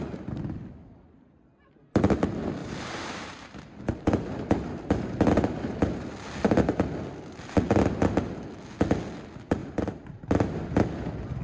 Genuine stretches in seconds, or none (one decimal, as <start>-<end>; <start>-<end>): 0.0-2.6; 3.6-9.6; 10.6-11.4